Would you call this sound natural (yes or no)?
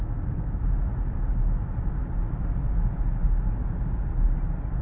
yes